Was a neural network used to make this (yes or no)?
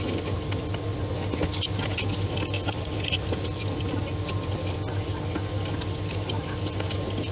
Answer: no